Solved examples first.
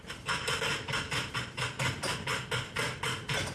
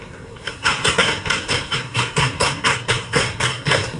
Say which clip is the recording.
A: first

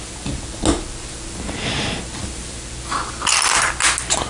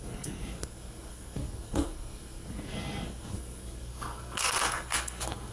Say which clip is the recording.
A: first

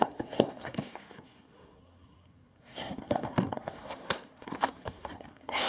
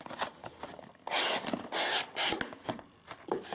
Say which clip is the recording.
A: second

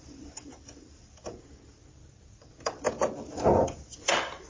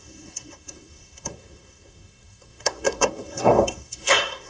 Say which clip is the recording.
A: first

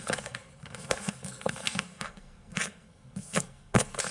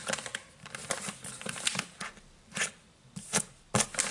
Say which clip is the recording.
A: second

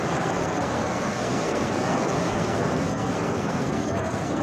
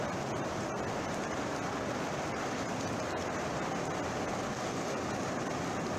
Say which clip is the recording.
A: second